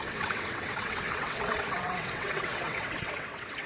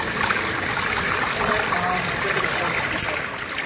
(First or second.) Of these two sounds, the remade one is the first